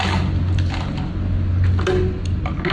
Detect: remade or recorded recorded